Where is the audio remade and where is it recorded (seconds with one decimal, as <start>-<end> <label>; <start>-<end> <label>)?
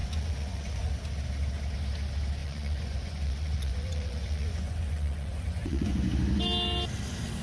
0.0-0.9 remade; 0.9-2.4 recorded; 2.4-6.1 remade; 6.1-7.4 recorded